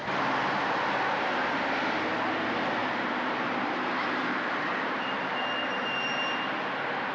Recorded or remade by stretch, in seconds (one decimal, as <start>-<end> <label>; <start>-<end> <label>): 0.0-2.8 recorded; 2.8-5.4 remade; 5.4-7.1 recorded